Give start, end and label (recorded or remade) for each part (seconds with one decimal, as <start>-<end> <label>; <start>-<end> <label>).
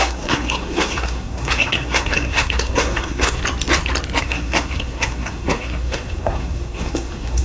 0.0-3.4 remade; 3.4-4.2 recorded; 4.2-7.4 remade